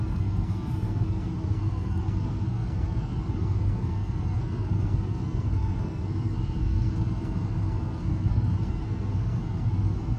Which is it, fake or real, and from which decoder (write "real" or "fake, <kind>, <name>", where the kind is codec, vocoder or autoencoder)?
fake, codec, SNAC